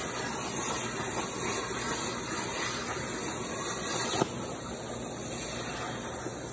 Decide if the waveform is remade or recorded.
recorded